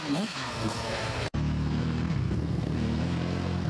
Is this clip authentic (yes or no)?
no